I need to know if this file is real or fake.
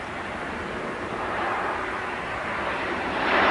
fake